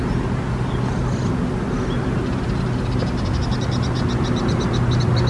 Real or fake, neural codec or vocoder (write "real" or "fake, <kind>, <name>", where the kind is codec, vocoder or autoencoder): real